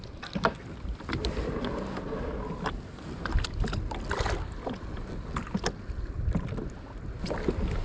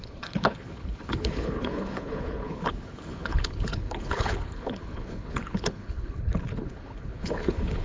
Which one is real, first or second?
first